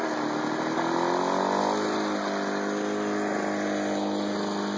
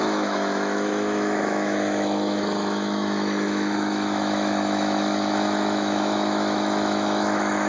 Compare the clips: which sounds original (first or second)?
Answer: first